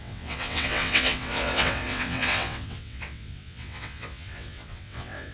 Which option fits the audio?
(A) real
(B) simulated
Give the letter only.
B